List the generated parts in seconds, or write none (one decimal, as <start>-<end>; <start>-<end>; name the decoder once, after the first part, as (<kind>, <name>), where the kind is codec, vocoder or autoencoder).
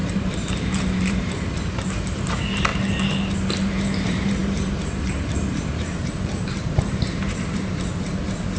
0.0-2.7 (vocoder, BigVGAN v2); 3.3-8.6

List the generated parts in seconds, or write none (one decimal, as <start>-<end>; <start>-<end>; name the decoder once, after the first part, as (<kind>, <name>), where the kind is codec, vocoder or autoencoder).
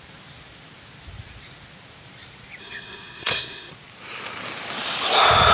2.6-3.7 (codec, SNAC)